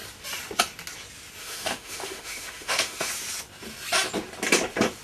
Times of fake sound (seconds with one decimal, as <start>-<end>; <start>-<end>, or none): 1.4-3.1